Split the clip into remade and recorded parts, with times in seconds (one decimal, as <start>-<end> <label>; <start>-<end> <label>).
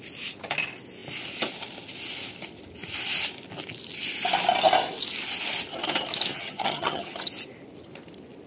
0.0-6.3 recorded; 6.3-7.3 remade; 7.3-8.5 recorded